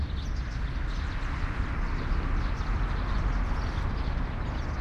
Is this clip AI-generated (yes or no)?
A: no